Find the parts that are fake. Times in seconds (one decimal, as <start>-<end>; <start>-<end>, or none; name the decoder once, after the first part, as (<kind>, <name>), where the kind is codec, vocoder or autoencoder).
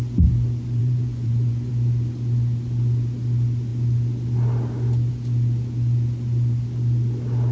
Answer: 0.8-1.7 (vocoder, Vocos)